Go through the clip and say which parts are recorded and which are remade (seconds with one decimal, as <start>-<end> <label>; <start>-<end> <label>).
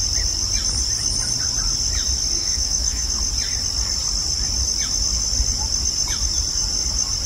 0.0-2.4 recorded; 2.4-3.1 remade; 3.1-7.3 recorded